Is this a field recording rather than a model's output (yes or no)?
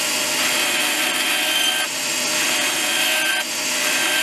yes